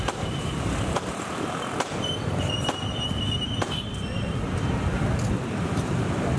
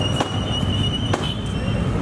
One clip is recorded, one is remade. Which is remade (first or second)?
first